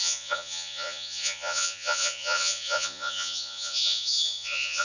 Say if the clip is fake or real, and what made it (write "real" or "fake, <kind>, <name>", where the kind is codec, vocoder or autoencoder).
fake, vocoder, Vocos